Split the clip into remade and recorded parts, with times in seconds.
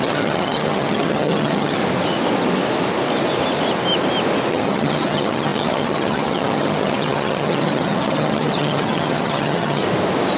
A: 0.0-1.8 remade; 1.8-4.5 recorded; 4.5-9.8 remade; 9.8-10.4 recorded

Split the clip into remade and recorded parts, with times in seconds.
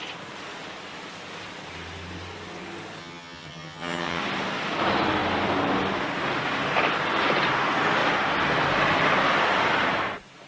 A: 0.0-3.0 recorded; 3.0-4.2 remade; 4.2-10.5 recorded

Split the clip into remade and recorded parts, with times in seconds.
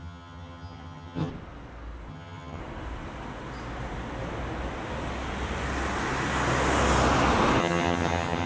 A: 0.0-1.3 remade; 1.3-2.1 recorded; 2.1-2.6 remade; 2.6-7.6 recorded; 7.6-8.5 remade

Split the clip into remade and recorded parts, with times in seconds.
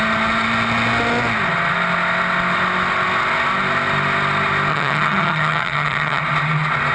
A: 0.0-4.7 recorded; 4.7-6.2 remade; 6.2-6.9 recorded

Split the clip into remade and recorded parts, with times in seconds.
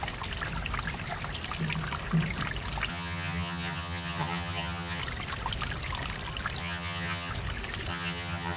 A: 0.0-2.9 recorded; 2.9-5.0 remade; 5.0-6.6 recorded; 6.6-7.3 remade; 7.3-7.9 recorded; 7.9-8.6 remade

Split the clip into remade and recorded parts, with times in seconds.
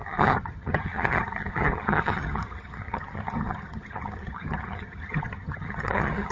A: 0.0-6.3 remade